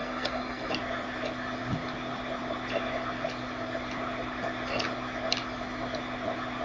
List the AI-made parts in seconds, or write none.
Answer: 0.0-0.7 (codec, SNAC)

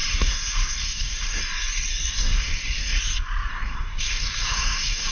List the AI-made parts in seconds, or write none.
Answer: 0.0-1.4 (codec, SNAC); 2.1-3.0; 3.5-5.1

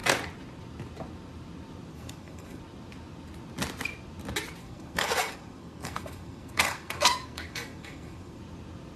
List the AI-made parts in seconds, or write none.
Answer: 1.9-2.6 (codec, SNAC); 4.6-8.4

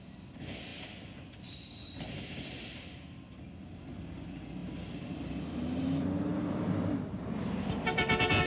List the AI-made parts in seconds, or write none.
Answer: none

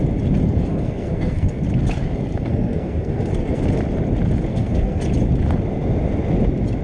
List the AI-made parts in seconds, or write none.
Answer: 0.7-1.6 (codec, SNAC); 2.5-3.6; 4.5-5.0

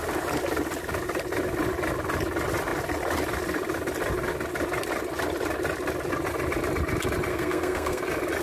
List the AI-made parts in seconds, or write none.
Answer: 7.3-8.0 (codec, SNAC)